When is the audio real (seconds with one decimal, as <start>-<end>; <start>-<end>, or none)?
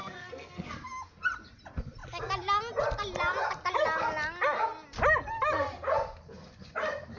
0.7-7.2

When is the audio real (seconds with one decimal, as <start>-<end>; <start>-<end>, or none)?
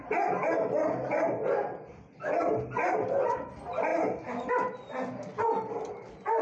0.0-6.4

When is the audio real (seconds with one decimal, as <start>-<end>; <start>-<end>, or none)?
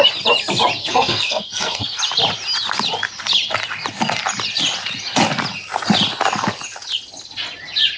0.0-0.8; 2.0-8.0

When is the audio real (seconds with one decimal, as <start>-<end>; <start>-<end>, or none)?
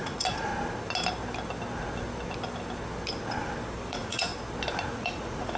0.5-3.9; 4.3-4.9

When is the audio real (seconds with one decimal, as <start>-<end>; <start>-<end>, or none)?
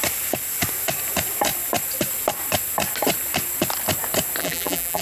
0.0-4.4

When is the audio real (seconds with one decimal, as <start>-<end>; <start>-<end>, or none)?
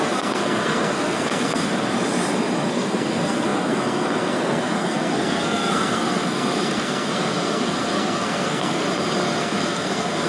1.7-2.7; 8.8-9.4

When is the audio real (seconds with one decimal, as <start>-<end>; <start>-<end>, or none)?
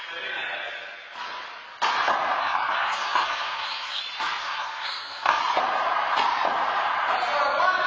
0.0-2.4; 4.0-4.4; 5.4-7.9